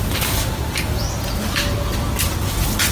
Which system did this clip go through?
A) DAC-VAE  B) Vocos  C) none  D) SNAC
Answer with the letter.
C